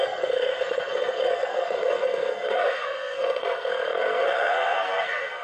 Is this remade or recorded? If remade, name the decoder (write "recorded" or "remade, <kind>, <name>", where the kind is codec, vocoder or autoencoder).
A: remade, codec, SNAC